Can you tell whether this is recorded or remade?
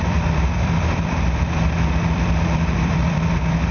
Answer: remade